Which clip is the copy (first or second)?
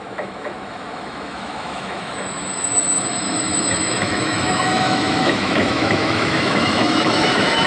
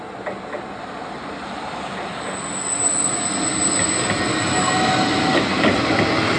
first